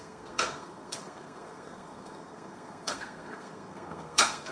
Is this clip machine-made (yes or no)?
yes